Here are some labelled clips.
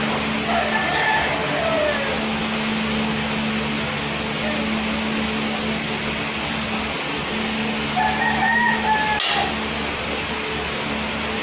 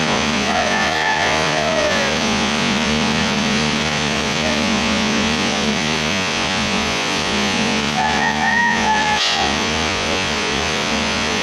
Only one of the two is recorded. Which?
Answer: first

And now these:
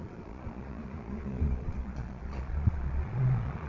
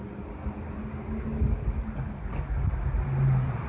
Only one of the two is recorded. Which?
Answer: second